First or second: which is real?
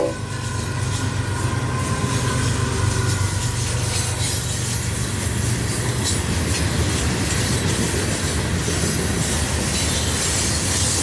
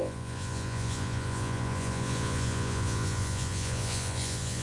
first